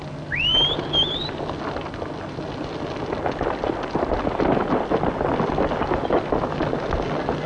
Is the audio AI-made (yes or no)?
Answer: no